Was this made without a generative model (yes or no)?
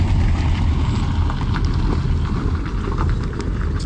yes